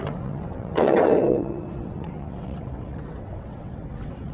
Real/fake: fake